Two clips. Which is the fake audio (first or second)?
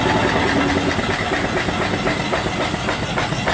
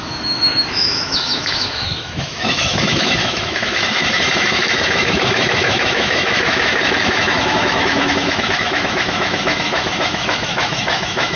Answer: second